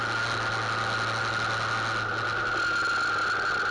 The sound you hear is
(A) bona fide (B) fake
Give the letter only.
A